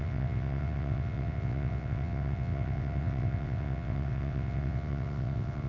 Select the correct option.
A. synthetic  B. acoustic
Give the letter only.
A